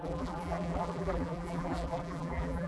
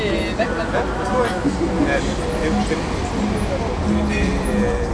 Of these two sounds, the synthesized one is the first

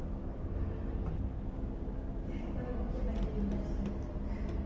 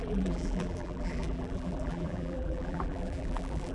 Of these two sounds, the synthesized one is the second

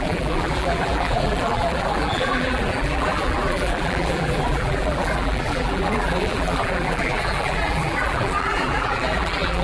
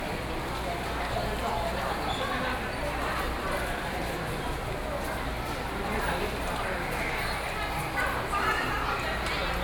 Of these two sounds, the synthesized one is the first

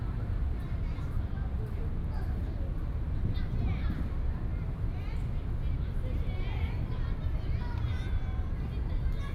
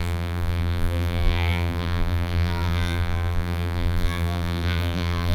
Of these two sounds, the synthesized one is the second